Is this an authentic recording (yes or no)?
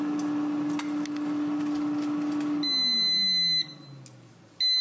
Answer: yes